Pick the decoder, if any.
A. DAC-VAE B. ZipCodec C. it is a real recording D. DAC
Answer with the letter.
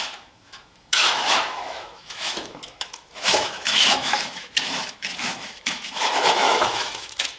A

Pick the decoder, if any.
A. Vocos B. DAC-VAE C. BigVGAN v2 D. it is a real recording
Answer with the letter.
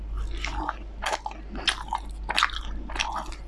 D